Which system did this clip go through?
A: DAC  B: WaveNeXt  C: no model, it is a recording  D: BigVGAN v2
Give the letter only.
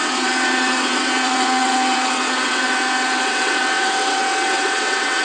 B